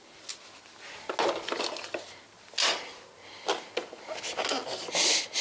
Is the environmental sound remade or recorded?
recorded